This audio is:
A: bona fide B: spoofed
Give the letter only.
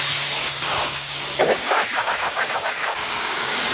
B